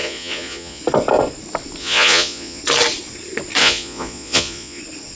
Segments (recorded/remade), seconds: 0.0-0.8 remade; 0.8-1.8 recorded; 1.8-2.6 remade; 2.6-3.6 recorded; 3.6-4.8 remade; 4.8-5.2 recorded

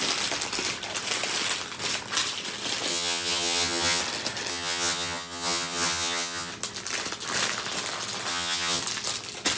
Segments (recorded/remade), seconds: 0.0-2.9 recorded; 2.9-4.0 remade; 4.0-4.5 recorded; 4.5-6.5 remade; 6.5-8.3 recorded; 8.3-8.8 remade; 8.8-9.6 recorded

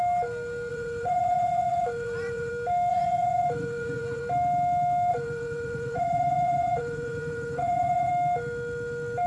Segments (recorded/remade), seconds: 0.0-0.7 recorded; 0.7-2.5 remade; 2.5-2.9 recorded; 2.9-4.2 remade; 4.2-5.1 recorded; 5.1-8.1 remade; 8.1-9.3 recorded

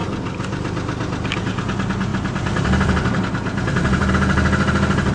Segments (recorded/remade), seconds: 0.0-2.1 recorded; 2.1-4.1 remade; 4.1-5.1 recorded

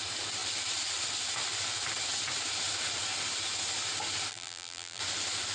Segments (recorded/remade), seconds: 0.0-4.3 recorded; 4.3-5.0 remade; 5.0-5.5 recorded

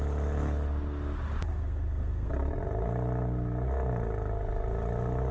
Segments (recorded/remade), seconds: 0.0-1.5 recorded; 1.5-2.3 remade; 2.3-5.3 recorded

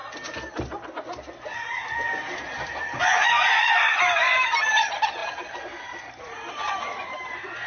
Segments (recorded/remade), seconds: 0.0-7.7 recorded